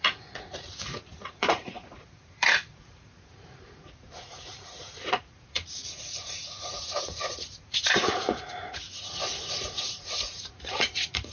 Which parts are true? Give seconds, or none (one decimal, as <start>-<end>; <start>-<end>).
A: none